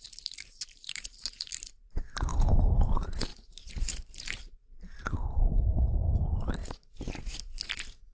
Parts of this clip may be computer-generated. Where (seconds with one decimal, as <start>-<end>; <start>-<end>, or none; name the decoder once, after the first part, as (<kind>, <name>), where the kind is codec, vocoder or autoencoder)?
0.0-8.1 (vocoder, BigVGAN v2)